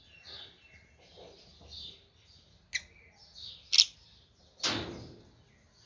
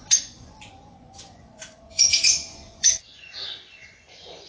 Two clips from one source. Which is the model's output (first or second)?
second